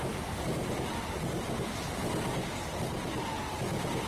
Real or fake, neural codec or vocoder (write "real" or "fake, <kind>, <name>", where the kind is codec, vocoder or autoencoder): real